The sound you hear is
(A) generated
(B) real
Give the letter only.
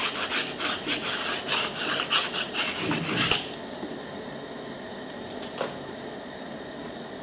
B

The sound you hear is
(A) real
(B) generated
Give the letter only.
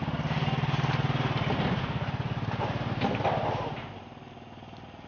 A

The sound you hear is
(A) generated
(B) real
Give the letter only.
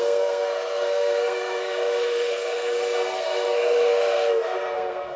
A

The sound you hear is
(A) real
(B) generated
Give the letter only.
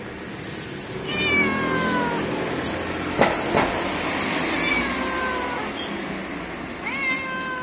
A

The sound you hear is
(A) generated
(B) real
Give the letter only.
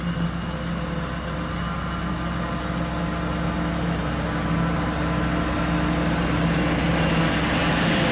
B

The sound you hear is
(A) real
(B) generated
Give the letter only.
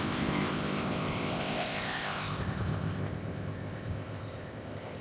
B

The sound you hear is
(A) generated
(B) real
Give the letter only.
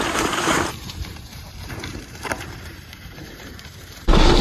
A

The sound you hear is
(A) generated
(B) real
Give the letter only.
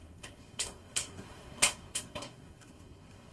A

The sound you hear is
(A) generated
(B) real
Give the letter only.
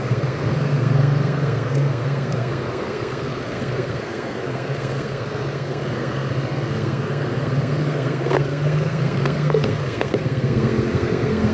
A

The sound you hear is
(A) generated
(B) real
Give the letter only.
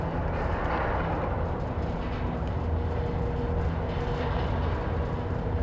B